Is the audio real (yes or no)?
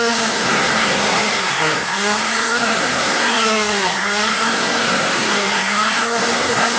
no